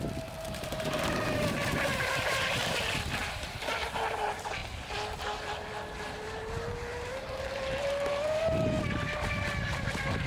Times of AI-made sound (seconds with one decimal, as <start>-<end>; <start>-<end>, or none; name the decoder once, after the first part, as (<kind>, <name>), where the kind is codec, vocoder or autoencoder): 1.9-2.8 (vocoder, BigVGAN v2); 3.2-4.0; 6.9-8.4